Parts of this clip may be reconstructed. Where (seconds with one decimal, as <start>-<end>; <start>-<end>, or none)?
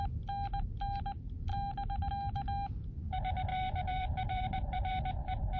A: 3.5-4.9